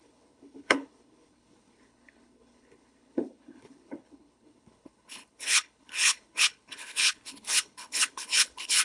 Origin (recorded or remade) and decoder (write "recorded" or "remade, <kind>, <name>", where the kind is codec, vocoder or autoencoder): remade, codec, HILCodec